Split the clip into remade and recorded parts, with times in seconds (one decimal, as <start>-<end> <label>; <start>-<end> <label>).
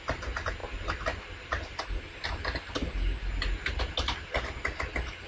0.0-5.3 recorded